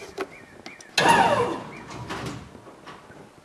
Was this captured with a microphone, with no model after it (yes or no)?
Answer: yes